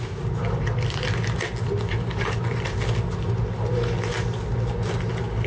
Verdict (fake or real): real